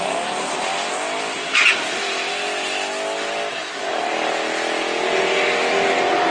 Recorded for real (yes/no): yes